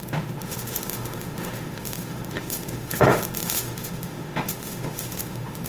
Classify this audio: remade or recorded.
remade